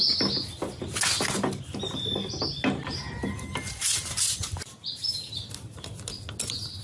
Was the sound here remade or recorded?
recorded